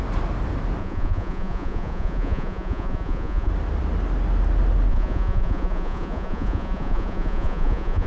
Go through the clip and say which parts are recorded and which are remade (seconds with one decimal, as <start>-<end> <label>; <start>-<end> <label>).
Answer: 0.0-0.8 recorded; 0.8-3.5 remade; 3.5-4.9 recorded; 4.9-8.1 remade